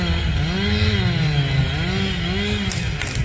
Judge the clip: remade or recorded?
recorded